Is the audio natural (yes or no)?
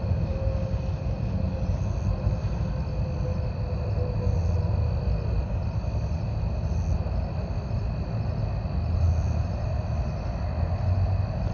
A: yes